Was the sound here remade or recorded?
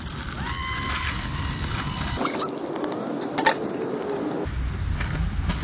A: recorded